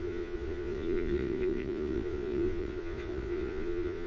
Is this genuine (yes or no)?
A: no